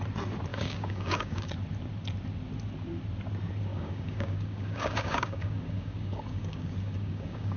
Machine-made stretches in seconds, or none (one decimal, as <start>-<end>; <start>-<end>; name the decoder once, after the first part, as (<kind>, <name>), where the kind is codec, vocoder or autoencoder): 0.5-1.5 (codec, DAC); 3.7-7.6